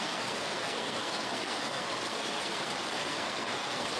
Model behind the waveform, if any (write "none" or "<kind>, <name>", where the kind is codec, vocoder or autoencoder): codec, SNAC